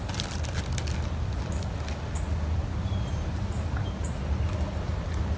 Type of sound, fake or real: real